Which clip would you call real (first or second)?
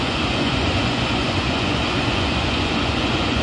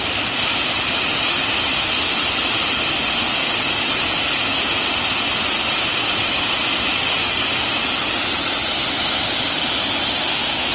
second